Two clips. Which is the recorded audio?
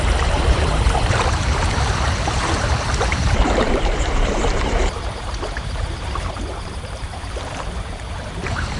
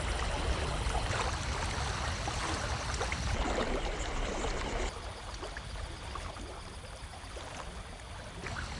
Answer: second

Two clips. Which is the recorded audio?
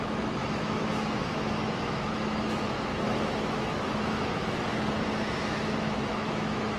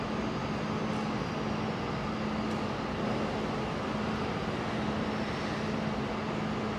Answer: second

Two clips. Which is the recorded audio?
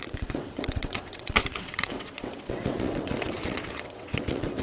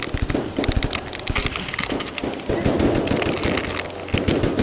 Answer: second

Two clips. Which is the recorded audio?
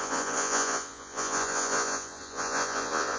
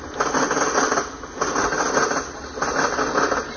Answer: second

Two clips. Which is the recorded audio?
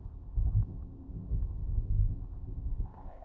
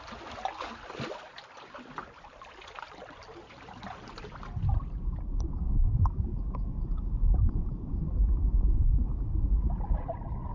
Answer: second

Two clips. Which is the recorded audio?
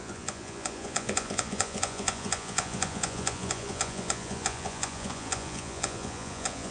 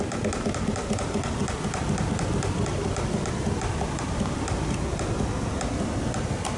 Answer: second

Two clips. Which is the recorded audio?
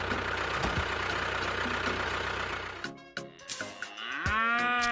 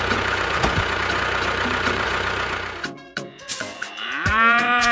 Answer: first